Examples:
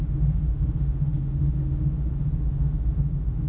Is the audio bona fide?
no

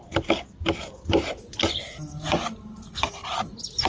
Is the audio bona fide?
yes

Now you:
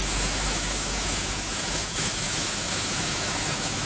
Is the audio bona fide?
no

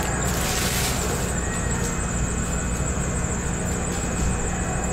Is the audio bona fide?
yes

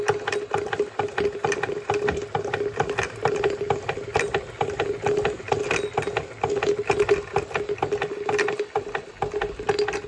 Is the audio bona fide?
yes